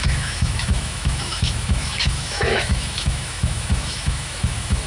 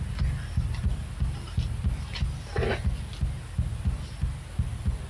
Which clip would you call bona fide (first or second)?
second